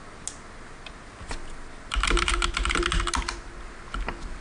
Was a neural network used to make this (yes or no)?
no